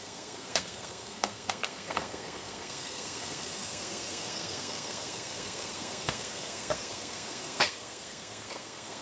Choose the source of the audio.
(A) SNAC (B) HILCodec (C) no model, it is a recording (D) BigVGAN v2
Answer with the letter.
A